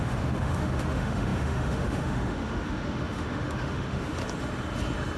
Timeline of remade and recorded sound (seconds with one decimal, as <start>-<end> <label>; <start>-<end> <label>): 0.0-4.2 remade; 4.2-5.2 recorded